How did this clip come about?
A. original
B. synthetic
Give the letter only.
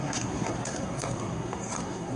B